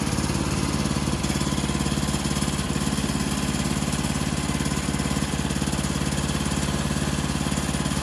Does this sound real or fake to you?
real